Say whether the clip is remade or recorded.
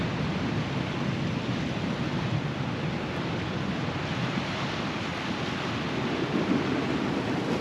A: recorded